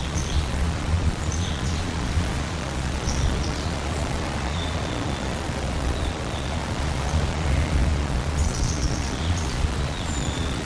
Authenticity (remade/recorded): remade